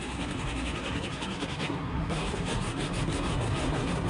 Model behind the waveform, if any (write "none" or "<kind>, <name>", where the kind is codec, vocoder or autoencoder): codec, SNAC